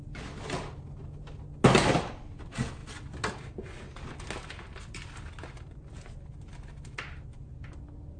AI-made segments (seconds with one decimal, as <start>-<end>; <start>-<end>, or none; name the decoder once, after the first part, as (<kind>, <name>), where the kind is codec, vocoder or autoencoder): none